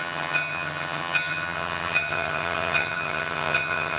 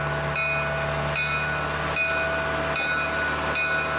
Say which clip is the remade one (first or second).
first